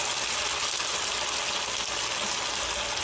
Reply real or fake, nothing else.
real